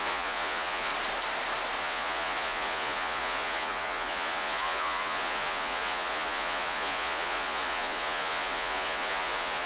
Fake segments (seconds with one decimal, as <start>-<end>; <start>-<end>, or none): 0.0-0.9; 1.8-9.7